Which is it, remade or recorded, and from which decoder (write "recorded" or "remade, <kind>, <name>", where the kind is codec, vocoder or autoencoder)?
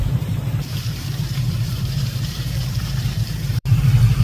remade, vocoder, BigVGAN v2